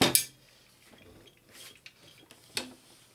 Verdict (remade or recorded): recorded